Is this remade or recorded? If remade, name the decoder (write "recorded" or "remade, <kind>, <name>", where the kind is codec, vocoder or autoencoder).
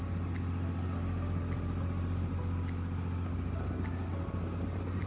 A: recorded